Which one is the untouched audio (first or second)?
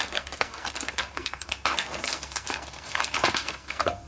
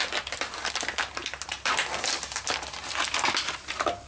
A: second